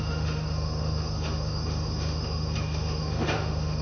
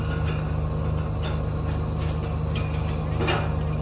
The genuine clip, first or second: second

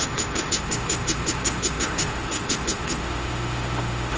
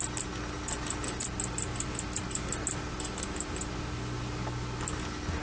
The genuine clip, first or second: second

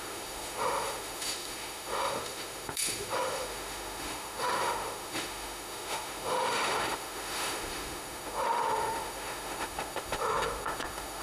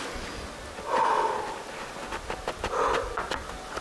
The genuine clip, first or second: second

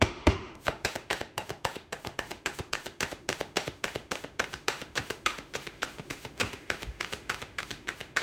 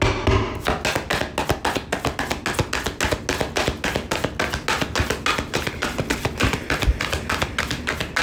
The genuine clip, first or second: second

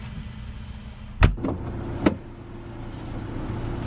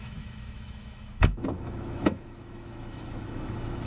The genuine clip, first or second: first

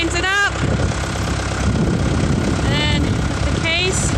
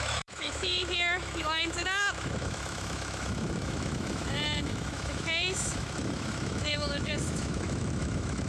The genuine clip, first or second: first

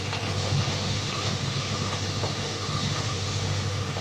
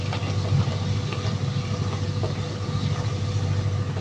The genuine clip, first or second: second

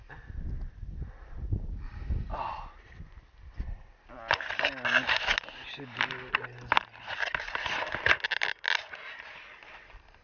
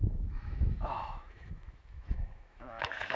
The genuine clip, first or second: first